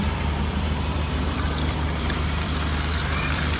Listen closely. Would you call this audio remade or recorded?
remade